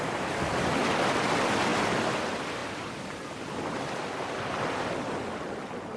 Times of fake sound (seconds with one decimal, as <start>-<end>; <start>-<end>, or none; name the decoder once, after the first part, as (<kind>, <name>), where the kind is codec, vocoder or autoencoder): none